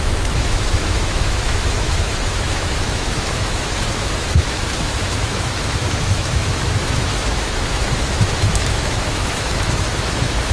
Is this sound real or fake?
fake